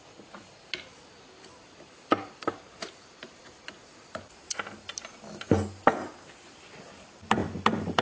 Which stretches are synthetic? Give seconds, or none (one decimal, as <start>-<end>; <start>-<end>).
0.9-4.6; 7.4-8.0